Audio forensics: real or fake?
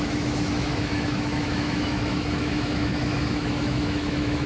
fake